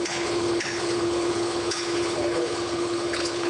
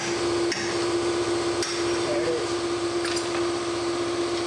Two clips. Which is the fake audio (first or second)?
first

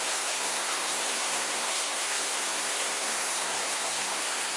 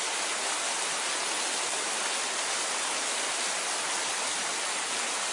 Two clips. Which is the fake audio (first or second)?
first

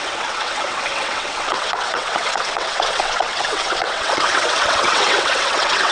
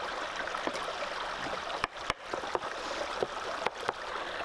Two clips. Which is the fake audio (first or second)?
first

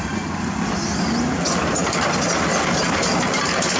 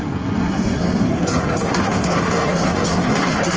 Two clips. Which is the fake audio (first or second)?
second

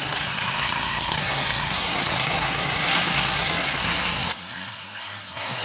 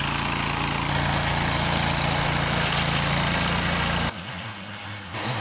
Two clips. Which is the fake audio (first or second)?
first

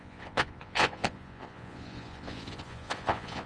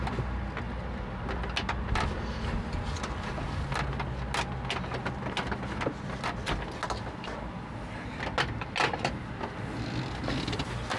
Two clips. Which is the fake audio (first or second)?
first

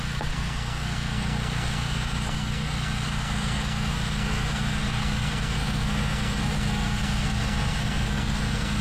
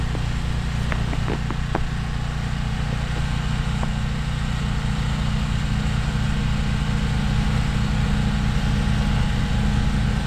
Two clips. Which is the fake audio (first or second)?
first